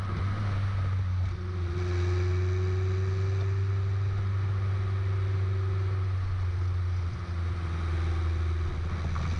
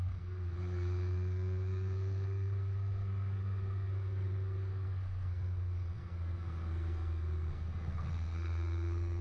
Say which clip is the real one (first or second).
first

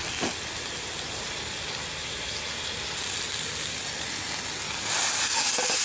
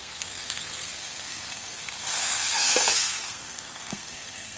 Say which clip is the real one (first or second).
first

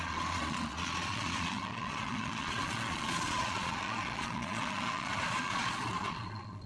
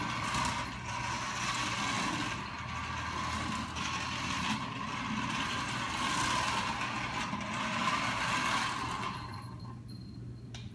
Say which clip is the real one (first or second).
second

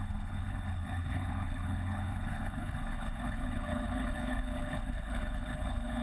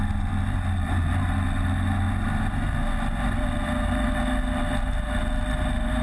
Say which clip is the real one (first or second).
second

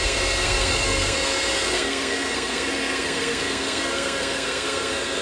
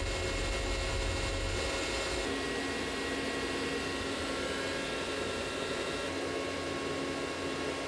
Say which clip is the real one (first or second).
second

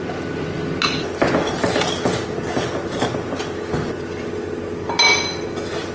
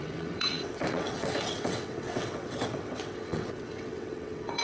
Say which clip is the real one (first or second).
first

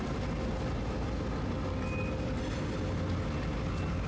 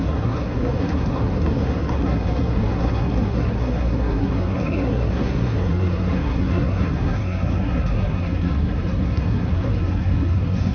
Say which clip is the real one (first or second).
first